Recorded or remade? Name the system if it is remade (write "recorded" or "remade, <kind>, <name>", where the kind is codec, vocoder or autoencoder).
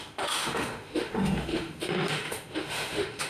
remade, autoencoder, DAC-VAE